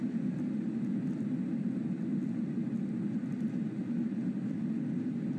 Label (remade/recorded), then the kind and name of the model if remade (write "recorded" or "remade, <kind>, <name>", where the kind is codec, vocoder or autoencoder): recorded